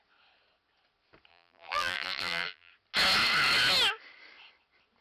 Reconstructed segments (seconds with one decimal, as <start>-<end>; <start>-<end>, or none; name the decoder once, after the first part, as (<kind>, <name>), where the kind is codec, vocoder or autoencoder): 1.3-2.7 (vocoder, BigVGAN v2)